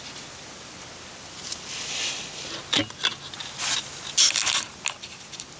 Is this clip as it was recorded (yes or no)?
yes